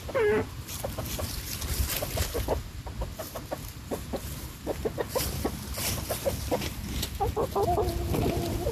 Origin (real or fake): real